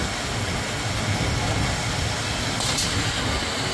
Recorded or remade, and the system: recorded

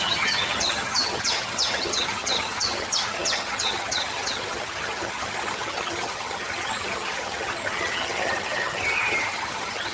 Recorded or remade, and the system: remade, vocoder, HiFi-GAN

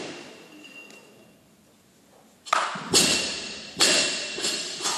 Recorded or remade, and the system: recorded